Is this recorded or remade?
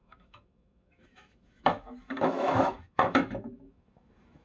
remade